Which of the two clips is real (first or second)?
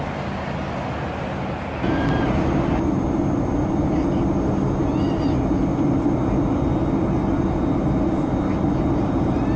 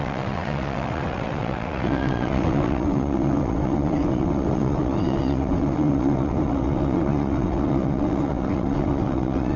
first